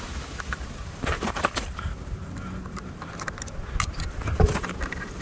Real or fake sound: real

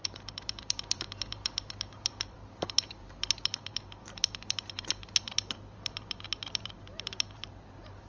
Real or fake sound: fake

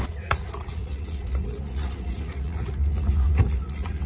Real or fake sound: fake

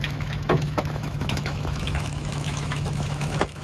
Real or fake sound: fake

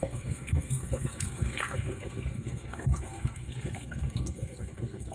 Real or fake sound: fake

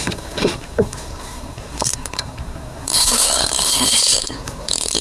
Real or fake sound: fake